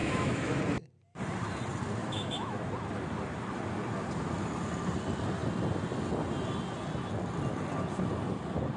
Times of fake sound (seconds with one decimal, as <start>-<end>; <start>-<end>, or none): 0.0-0.6; 2.0-2.7